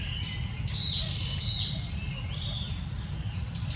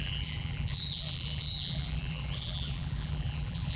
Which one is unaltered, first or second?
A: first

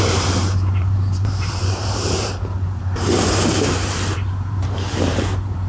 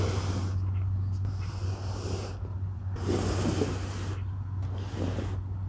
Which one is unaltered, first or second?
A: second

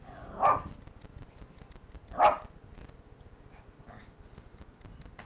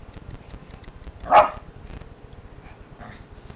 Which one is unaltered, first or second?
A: first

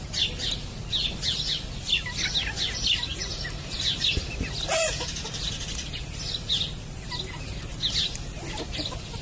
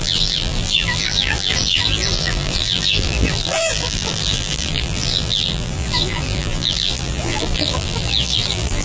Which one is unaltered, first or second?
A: first